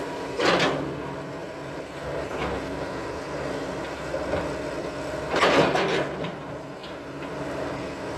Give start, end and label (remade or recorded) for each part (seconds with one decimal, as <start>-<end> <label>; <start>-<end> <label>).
0.0-8.2 recorded